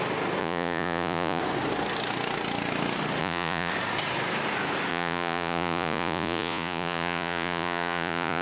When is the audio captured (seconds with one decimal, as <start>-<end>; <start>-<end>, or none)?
0.0-0.4; 1.4-3.2; 3.7-4.9